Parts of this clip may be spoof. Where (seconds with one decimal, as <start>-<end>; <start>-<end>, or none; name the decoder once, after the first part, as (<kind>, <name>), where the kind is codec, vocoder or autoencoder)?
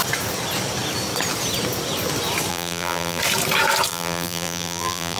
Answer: 2.5-3.2 (vocoder, BigVGAN v2); 3.9-5.2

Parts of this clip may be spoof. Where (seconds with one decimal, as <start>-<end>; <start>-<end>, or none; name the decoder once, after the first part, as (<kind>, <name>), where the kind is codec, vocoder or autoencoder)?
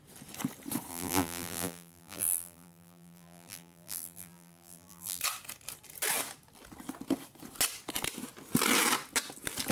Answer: 0.9-5.2 (vocoder, BigVGAN v2)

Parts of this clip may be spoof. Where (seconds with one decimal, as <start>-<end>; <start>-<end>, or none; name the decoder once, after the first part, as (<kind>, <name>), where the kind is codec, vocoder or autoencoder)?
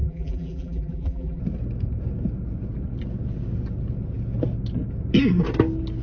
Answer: 0.0-1.4 (vocoder, BigVGAN v2)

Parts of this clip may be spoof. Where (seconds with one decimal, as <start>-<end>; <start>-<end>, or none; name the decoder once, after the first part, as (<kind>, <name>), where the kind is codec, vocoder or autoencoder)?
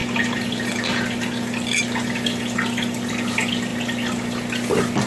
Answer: 0.0-3.1 (vocoder, BigVGAN v2)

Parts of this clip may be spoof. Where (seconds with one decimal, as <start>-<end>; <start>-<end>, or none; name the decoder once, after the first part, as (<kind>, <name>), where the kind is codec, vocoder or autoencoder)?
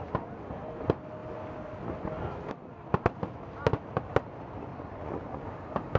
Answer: 4.7-5.4 (vocoder, Vocos)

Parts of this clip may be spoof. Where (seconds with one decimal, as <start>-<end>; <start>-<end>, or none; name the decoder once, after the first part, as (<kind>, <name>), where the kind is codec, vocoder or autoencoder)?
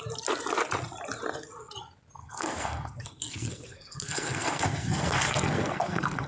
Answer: 2.2-6.3 (codec, SNAC)